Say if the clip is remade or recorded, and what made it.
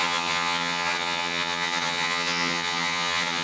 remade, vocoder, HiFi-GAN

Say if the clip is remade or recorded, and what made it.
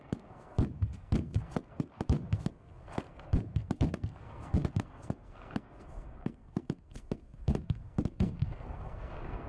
remade, codec, SNAC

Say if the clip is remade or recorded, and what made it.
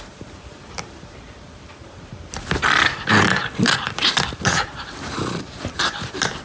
remade, vocoder, BigVGAN v2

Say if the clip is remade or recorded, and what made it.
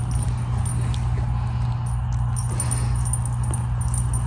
recorded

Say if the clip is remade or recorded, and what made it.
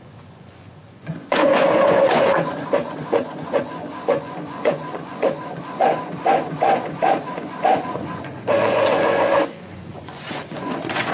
remade, vocoder, Vocos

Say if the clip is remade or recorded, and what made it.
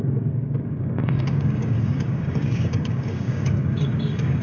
remade, codec, DAC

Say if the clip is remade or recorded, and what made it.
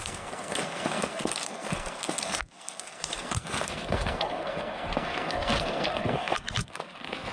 remade, codec, SNAC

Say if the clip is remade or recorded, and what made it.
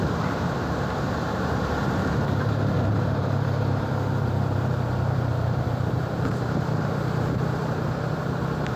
remade, vocoder, BigVGAN v2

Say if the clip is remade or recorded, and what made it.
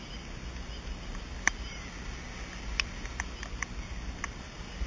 recorded